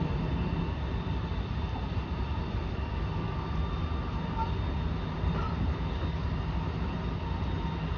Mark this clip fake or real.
real